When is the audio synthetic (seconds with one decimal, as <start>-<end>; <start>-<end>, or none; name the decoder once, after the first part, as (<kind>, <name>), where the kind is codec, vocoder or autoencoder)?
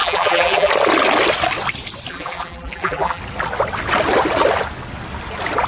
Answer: 0.0-0.7 (vocoder, BigVGAN v2); 2.1-3.2